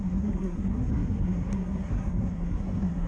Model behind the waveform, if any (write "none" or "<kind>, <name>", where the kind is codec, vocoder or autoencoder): codec, SNAC